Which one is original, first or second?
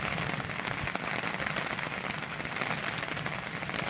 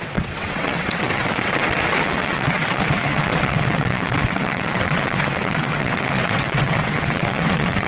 first